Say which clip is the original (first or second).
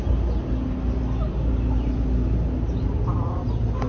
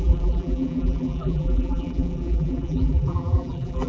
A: first